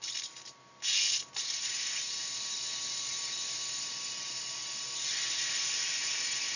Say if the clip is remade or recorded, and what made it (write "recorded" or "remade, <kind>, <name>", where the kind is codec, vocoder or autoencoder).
recorded